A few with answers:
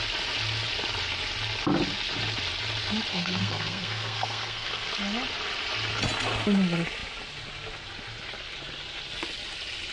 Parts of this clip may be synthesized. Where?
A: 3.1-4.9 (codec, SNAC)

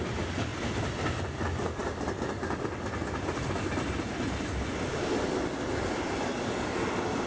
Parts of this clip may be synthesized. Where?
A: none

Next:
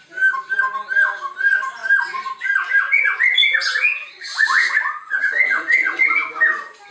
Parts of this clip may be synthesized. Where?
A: 3.7-6.1 (vocoder, Vocos)

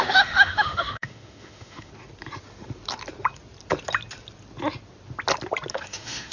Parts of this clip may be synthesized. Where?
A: 0.0-1.9 (autoencoder, DAC-VAE); 5.7-6.3

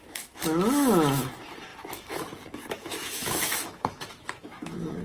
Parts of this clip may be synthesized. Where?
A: 0.0-5.0 (autoencoder, DAC-VAE)

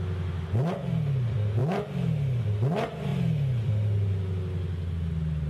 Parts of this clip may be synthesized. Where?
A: none